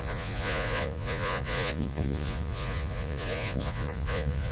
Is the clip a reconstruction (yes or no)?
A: yes